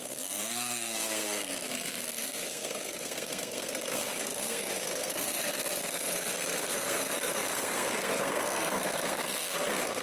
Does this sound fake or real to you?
fake